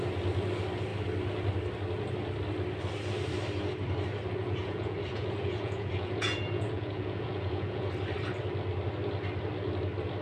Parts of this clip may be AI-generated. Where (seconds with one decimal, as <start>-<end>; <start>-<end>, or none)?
4.4-7.9